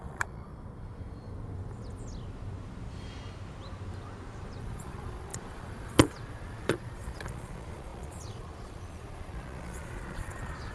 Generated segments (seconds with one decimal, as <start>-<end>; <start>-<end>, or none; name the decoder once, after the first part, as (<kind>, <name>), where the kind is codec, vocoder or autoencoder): 0.0-0.5 (vocoder, Vocos); 4.6-10.7